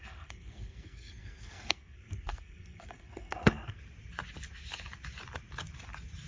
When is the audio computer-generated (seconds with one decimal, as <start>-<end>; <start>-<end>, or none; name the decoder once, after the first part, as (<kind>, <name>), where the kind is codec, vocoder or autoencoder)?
0.0-3.8 (codec, SNAC)